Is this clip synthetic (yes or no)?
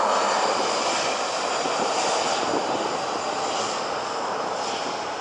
no